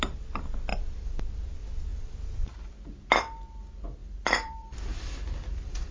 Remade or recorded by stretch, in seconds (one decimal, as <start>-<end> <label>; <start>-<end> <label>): 0.0-0.7 recorded; 0.7-1.2 remade; 1.2-1.9 recorded; 1.9-2.7 remade; 2.7-4.0 recorded; 4.0-5.9 remade